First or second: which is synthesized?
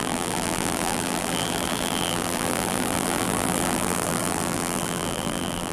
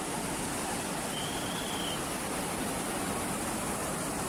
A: first